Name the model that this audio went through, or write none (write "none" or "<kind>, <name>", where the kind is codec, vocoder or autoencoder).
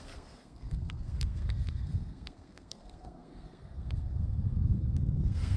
codec, SNAC